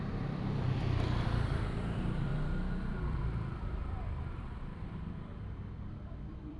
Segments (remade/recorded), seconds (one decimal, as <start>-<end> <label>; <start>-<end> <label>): 0.0-2.3 remade; 2.3-2.9 recorded; 2.9-6.6 remade